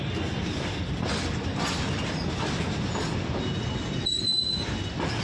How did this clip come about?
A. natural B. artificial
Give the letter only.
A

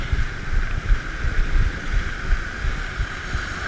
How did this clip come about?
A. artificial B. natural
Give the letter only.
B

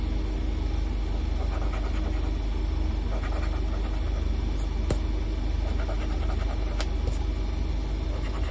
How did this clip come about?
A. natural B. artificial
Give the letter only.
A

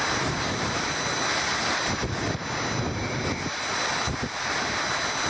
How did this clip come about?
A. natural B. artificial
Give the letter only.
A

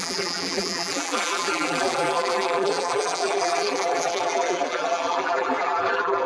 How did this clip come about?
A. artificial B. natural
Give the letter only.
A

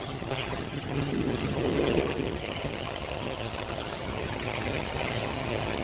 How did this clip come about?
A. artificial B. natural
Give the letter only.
A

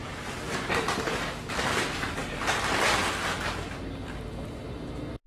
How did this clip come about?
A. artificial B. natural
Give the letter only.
B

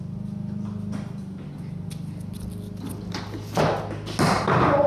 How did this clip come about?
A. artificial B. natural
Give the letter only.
B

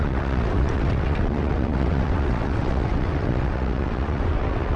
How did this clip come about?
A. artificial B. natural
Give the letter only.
A